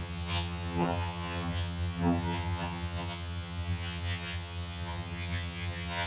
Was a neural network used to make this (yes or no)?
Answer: yes